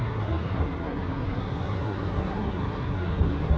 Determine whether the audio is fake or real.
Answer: fake